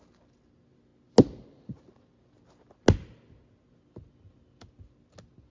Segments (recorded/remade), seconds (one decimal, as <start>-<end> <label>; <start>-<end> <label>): 0.0-5.5 recorded

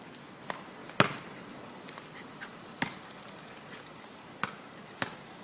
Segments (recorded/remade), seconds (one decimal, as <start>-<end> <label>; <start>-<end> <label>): 0.0-0.8 recorded; 0.8-4.0 remade; 4.0-5.4 recorded